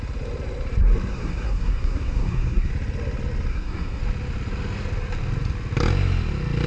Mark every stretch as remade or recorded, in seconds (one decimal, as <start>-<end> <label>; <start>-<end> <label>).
0.0-1.1 recorded; 1.1-2.7 remade; 2.7-3.5 recorded; 3.5-4.0 remade; 4.0-6.7 recorded